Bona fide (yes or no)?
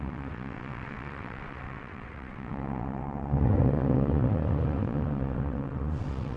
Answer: no